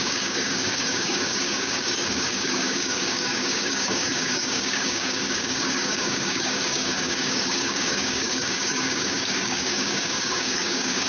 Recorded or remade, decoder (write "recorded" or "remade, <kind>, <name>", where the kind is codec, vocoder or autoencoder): remade, codec, DAC